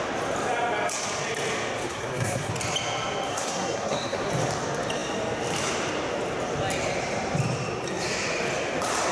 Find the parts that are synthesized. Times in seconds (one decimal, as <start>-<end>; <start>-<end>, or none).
1.8-2.5; 3.3-4.3